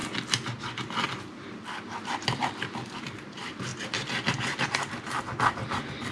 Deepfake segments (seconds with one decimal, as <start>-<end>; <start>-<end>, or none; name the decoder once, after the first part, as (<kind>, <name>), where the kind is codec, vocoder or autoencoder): none